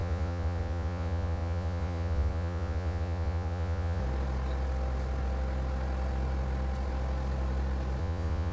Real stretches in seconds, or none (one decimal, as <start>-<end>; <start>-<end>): 4.0-8.0